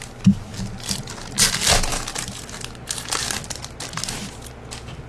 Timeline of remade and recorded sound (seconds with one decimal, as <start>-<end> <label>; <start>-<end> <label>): 0.0-5.1 recorded